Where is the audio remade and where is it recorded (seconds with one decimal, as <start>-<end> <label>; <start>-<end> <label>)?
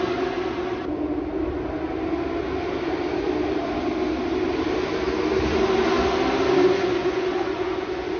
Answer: 0.0-7.0 recorded; 7.0-8.2 remade